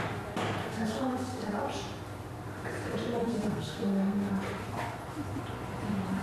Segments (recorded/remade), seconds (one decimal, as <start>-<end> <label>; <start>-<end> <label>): 0.0-0.6 recorded; 0.6-1.6 remade; 1.6-3.2 recorded; 3.2-4.3 remade; 4.3-6.2 recorded